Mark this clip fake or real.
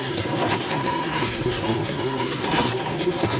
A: fake